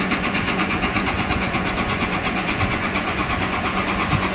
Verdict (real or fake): fake